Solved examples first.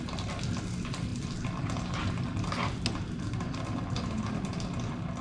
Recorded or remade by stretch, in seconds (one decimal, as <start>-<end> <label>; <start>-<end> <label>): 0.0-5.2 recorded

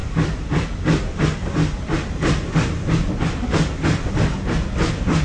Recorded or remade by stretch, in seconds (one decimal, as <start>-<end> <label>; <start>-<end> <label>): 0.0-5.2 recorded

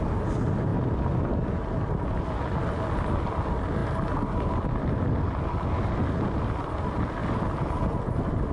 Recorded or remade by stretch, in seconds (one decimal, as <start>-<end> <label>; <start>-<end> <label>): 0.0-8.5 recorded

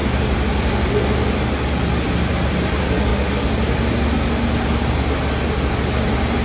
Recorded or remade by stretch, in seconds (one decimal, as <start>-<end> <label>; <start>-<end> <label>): 0.0-6.4 recorded